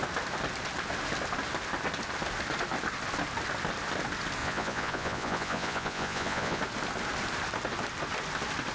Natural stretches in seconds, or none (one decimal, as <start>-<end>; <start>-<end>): 0.0-4.4; 6.6-8.7

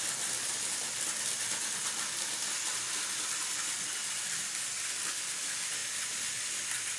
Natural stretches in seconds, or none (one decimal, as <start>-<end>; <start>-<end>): 0.0-7.0

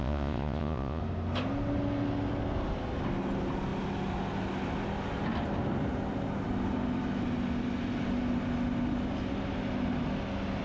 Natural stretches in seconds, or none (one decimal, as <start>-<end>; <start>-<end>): 1.0-10.6

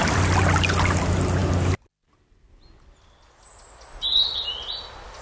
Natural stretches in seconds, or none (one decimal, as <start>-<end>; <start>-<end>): 0.0-5.2

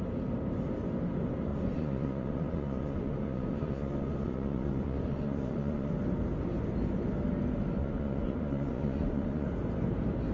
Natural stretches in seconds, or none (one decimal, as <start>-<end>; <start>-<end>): 0.0-1.5; 5.9-7.8; 9.5-10.3